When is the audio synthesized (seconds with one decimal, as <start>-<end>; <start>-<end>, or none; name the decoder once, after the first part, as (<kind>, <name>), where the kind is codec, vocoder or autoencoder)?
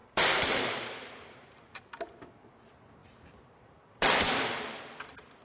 0.0-1.8 (vocoder, BigVGAN v2); 3.0-4.8